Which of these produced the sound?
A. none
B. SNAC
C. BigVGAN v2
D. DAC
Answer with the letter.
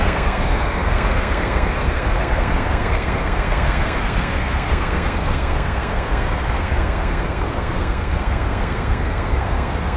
B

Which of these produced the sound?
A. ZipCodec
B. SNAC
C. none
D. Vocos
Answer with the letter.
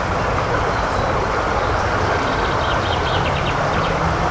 C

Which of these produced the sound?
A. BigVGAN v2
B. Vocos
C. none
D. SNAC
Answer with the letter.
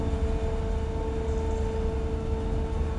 C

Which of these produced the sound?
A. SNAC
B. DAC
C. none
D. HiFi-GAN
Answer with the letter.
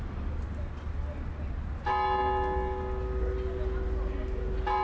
C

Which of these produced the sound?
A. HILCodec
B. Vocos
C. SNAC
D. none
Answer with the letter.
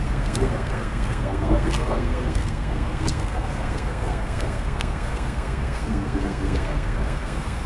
C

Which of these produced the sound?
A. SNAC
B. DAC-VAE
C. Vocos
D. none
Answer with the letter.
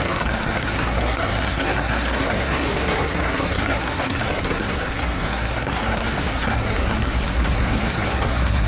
A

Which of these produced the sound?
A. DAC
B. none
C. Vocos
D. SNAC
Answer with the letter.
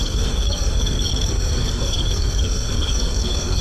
D